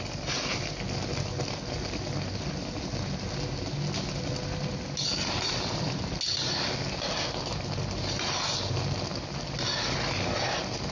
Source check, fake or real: real